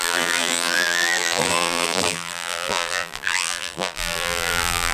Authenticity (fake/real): fake